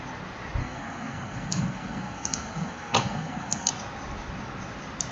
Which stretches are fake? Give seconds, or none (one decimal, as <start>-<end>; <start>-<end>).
0.6-3.7